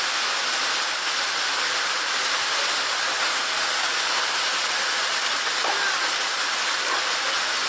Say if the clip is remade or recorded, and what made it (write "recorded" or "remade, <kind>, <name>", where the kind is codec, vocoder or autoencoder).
recorded